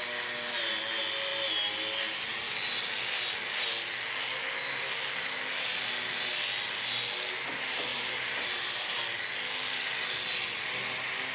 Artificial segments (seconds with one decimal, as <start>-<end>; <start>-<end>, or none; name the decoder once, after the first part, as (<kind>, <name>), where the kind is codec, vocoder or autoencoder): 7.9-9.0 (vocoder, BigVGAN v2)

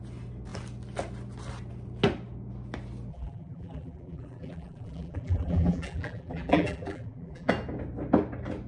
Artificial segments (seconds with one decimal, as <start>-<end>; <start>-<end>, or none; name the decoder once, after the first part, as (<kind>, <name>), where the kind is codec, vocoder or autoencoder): 3.1-7.5 (vocoder, BigVGAN v2)

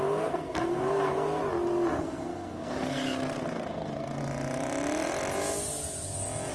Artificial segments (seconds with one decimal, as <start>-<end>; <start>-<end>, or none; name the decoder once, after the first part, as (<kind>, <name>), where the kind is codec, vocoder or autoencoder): 0.0-1.4 (codec, SNAC); 1.9-4.2

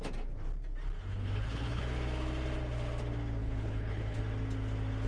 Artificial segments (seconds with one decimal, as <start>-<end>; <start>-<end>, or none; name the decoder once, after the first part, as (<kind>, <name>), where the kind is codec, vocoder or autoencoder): 1.1-1.8 (codec, HILCodec); 3.4-4.2

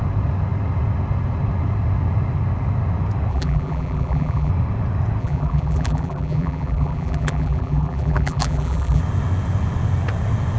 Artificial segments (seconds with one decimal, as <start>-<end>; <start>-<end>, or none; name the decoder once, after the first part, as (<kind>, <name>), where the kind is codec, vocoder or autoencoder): 3.3-4.5 (vocoder, BigVGAN v2); 5.2-9.0

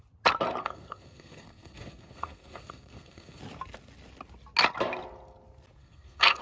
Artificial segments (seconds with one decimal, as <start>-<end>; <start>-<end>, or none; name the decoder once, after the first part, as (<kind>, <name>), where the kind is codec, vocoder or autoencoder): 0.6-3.4 (codec, SNAC); 5.8-6.4

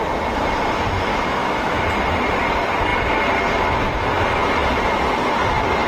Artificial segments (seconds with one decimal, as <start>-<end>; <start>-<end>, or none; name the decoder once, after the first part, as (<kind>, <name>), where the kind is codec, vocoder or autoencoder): 1.1-1.8 (autoencoder, DAC-VAE)